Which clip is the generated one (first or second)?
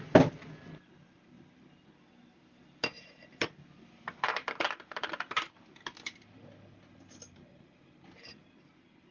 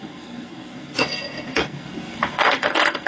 second